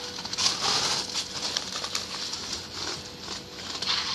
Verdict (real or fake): real